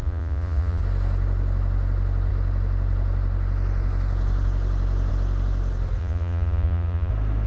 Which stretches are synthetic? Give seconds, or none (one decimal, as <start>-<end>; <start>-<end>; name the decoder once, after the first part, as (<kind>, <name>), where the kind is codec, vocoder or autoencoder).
0.0-0.8 (vocoder, Vocos); 6.0-7.1